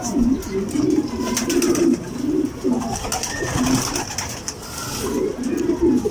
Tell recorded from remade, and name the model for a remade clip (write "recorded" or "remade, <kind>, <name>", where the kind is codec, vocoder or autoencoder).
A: recorded